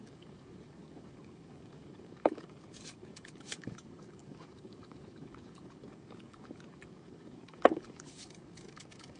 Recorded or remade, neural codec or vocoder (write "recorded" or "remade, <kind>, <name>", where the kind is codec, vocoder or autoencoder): remade, codec, DAC